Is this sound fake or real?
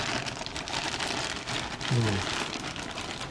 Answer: real